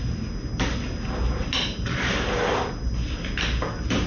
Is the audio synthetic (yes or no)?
no